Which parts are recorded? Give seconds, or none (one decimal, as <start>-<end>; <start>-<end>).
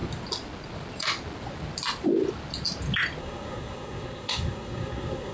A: 0.0-3.2